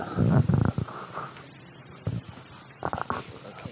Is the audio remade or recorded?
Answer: recorded